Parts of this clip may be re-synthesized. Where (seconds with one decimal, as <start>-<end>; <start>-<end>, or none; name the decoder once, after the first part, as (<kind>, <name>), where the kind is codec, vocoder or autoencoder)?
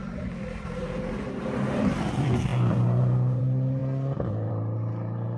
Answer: 0.0-3.8 (vocoder, BigVGAN v2); 4.5-5.4